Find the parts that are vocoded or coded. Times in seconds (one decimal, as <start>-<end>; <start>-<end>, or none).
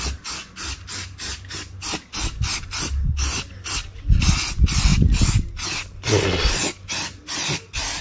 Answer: none